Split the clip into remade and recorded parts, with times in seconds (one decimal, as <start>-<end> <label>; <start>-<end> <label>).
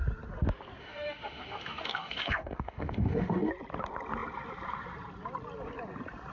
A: 0.0-0.8 recorded; 0.8-3.5 remade; 3.5-6.3 recorded